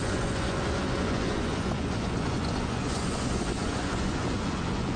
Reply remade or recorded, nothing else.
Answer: remade